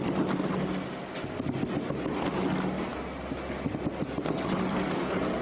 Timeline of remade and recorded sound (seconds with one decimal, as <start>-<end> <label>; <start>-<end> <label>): 0.0-5.4 recorded